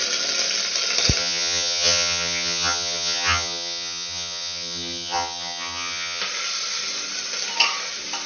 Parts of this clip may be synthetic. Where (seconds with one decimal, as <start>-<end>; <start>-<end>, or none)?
1.2-6.2